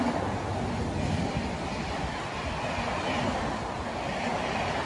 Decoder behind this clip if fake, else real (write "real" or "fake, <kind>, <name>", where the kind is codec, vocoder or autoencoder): real